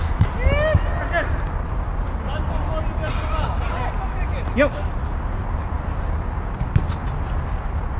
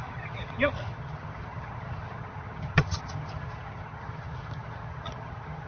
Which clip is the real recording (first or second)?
first